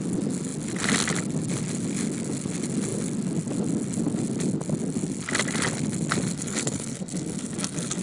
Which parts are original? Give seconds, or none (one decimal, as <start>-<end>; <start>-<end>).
0.0-6.3